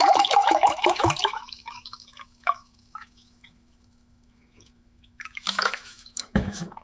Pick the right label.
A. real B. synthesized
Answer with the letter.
B